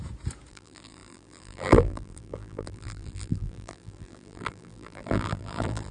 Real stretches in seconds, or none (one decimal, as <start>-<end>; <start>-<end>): 0.0-0.5